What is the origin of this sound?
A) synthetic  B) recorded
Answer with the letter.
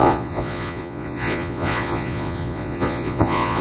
A